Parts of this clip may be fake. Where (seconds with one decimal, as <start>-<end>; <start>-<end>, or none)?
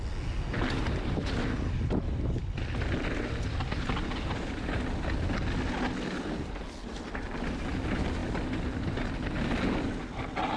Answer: none